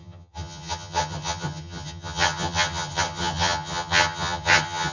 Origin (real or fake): fake